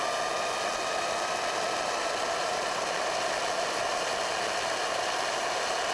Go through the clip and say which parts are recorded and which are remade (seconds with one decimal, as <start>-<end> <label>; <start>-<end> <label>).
0.0-2.4 recorded; 2.4-3.0 remade; 3.0-5.9 recorded